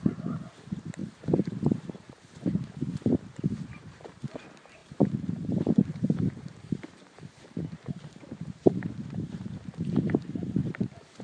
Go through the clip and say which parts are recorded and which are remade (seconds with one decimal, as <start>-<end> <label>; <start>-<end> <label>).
0.0-11.2 remade